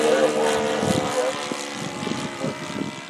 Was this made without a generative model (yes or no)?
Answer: yes